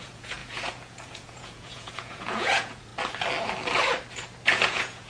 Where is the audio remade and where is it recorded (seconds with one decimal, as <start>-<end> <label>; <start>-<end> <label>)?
0.0-2.9 remade; 2.9-4.6 recorded; 4.6-5.1 remade